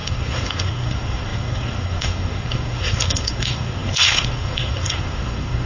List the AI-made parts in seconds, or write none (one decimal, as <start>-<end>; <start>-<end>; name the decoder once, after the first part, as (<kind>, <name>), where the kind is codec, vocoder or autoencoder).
0.0-5.7 (codec, SNAC)